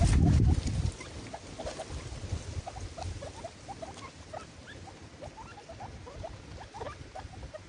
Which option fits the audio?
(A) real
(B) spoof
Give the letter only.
A